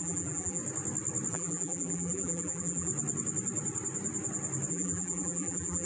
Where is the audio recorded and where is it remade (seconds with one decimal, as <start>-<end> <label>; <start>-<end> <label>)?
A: 0.0-0.6 remade; 0.6-1.3 recorded; 1.3-2.9 remade; 2.9-4.7 recorded; 4.7-5.9 remade